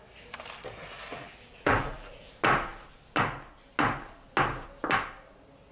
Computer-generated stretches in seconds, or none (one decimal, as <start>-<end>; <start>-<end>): 1.1-2.3